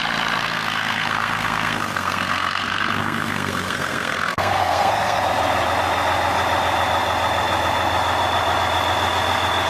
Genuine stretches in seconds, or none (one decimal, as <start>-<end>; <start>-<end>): 0.0-0.4; 5.2-9.7